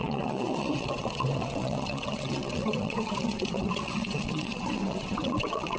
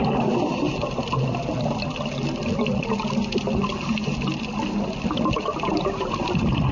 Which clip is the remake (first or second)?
first